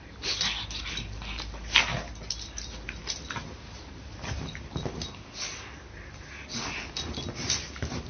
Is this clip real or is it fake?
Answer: real